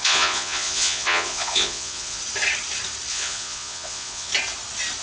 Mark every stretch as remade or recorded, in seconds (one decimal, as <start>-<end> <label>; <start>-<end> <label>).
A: 0.0-2.2 remade; 2.2-3.1 recorded; 3.1-4.3 remade; 4.3-5.0 recorded